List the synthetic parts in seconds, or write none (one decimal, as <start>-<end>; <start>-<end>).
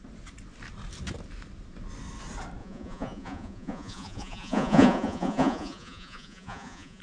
2.6-7.0